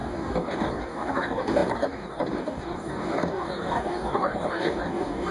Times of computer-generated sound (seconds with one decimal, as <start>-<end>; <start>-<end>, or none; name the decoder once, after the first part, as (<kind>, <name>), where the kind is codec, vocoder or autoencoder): 0.0-5.3 (codec, DAC)